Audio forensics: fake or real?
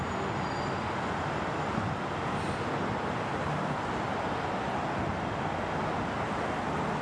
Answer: real